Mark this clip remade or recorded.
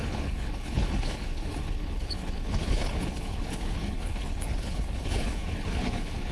remade